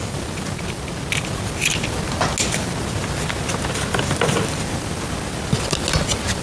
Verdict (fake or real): real